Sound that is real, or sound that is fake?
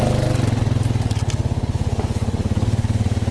real